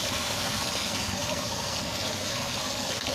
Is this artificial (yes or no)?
yes